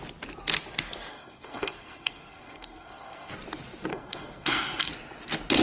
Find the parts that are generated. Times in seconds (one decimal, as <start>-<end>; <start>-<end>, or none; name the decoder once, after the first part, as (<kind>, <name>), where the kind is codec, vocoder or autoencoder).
1.1-3.3 (codec, SNAC); 3.9-4.9

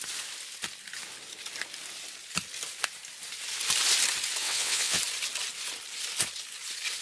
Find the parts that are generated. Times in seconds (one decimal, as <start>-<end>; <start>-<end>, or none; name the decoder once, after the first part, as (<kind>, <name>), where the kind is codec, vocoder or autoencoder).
4.4-5.0 (vocoder, WaveNeXt)

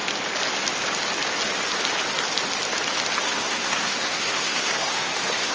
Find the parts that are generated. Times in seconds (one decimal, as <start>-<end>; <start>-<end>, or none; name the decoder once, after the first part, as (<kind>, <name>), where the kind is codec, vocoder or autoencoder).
3.2-5.5 (codec, SNAC)

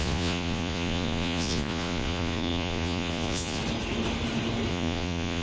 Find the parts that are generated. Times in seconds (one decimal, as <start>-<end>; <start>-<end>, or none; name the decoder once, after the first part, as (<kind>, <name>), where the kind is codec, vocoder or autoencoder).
0.0-3.6 (vocoder, Vocos); 4.7-5.4

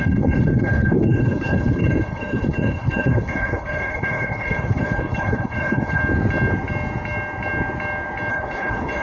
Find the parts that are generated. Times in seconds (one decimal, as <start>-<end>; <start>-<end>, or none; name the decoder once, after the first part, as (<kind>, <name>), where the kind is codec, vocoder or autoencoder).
0.0-6.0 (codec, HILCodec); 8.3-9.0

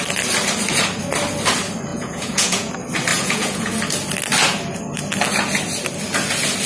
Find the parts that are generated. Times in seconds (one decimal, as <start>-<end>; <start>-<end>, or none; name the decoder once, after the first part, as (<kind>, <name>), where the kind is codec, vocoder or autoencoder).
1.9-2.7 (vocoder, Vocos); 3.1-3.7